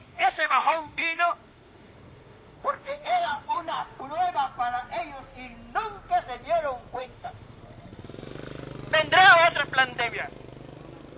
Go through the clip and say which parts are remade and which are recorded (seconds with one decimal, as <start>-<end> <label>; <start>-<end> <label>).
0.0-4.0 remade; 4.0-7.0 recorded; 7.0-7.6 remade; 7.6-11.2 recorded